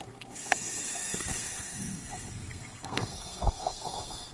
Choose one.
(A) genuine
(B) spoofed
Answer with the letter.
B